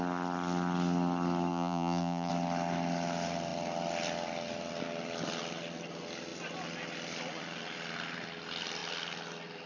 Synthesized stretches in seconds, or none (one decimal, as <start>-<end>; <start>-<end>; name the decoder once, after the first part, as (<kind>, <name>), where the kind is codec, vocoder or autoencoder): 1.5-2.3 (vocoder, Vocos)

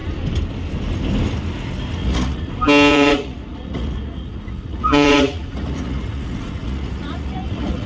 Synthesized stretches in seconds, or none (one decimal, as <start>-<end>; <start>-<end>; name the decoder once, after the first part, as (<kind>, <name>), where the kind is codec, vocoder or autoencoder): 2.0-2.5 (vocoder, Vocos); 2.9-7.9

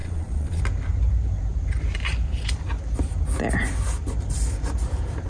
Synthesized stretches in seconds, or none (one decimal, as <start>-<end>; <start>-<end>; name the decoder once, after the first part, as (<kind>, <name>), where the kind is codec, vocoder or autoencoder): 0.0-0.6 (vocoder, Vocos)